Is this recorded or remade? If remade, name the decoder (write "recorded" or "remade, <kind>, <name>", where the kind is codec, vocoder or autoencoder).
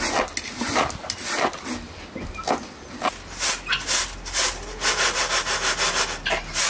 recorded